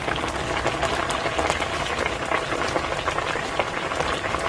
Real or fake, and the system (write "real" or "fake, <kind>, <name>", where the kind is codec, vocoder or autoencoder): real